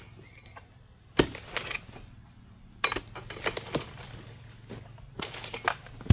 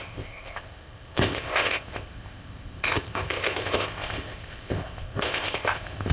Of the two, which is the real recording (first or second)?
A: first